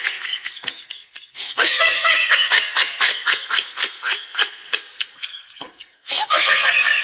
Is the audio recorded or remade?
remade